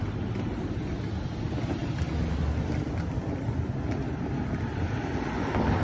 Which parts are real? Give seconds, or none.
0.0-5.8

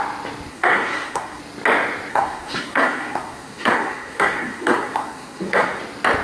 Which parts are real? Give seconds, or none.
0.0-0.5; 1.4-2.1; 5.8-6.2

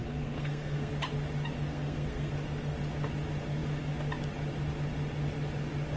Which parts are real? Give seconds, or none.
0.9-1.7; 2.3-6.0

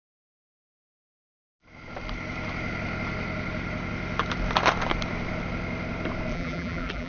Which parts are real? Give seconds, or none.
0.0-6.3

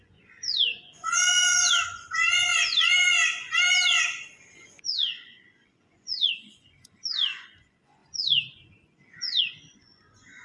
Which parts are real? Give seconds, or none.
none

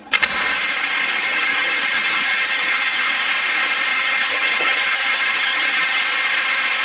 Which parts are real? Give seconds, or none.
0.0-1.2; 3.1-3.9; 6.0-6.8

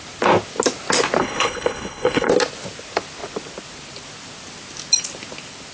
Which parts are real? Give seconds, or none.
0.0-1.2; 2.3-5.7

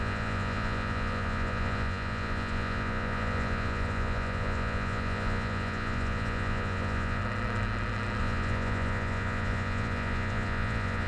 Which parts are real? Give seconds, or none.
7.2-8.2